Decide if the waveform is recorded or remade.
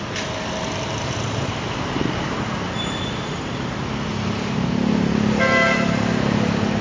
recorded